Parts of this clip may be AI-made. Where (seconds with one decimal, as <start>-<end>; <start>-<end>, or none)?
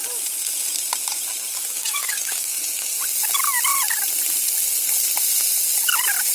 1.5-2.5